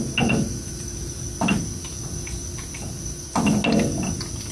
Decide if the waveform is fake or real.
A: real